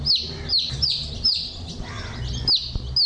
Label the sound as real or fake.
real